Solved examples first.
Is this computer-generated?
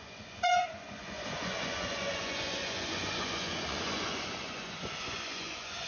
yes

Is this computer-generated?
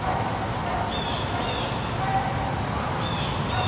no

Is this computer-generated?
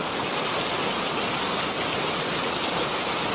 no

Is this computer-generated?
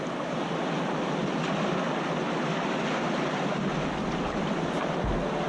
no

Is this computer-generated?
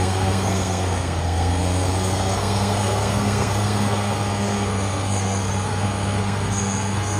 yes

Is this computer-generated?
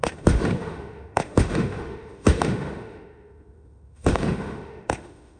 yes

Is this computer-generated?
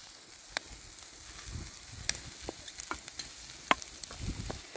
no